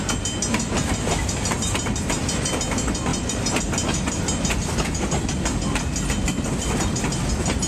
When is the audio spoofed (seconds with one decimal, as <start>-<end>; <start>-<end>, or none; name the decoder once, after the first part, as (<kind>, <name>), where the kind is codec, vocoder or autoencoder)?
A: 3.1-3.6 (vocoder, BigVGAN v2)